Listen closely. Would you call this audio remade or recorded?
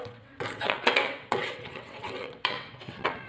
remade